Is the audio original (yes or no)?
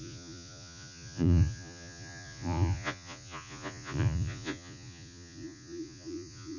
no